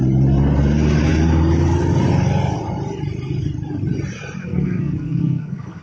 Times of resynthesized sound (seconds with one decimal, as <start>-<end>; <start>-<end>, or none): 4.4-5.8